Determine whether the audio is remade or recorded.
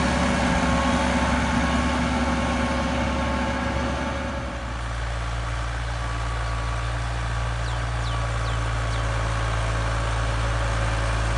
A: recorded